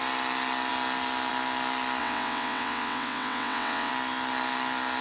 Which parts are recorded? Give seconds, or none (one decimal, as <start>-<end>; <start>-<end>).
0.0-2.0; 3.9-5.0